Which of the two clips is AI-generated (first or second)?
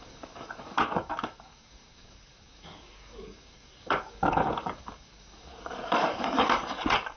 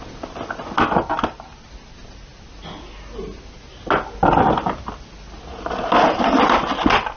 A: first